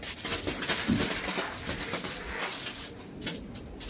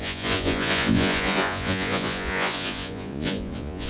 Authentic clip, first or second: first